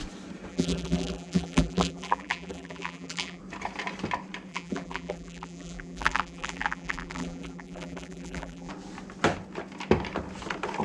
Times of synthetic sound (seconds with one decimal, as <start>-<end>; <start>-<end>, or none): 0.5-3.4; 4.5-8.7